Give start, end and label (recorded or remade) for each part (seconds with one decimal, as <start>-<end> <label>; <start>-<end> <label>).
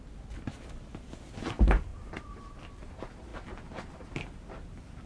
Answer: 0.0-1.9 recorded; 1.9-2.6 remade; 2.6-3.3 recorded; 3.3-4.5 remade; 4.5-5.1 recorded